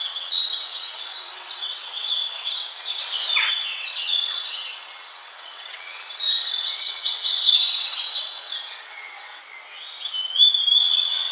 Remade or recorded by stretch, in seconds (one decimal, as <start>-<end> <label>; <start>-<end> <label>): 0.0-3.0 remade; 3.0-3.5 recorded; 3.5-9.4 remade; 9.4-10.8 recorded; 10.8-11.3 remade

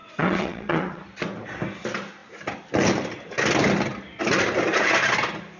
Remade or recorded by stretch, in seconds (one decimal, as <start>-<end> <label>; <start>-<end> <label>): 0.0-1.0 remade; 1.0-5.6 recorded

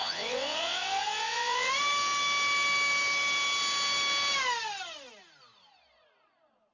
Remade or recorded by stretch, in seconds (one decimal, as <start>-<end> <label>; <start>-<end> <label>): 0.0-1.7 remade; 1.7-6.7 recorded

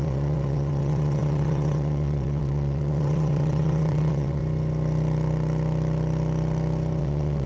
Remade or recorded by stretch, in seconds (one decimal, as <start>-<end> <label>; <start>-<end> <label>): 0.0-4.4 remade; 4.4-7.0 recorded; 7.0-7.5 remade

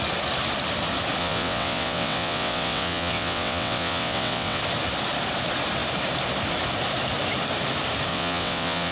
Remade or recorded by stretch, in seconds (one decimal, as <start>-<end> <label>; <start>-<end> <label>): 0.0-1.2 recorded; 1.2-4.6 remade; 4.6-8.1 recorded; 8.1-8.9 remade

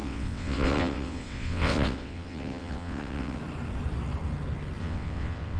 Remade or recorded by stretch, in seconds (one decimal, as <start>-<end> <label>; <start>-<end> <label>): 0.0-3.4 remade; 3.4-4.8 recorded; 4.8-5.6 remade